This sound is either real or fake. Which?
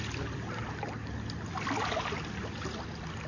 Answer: real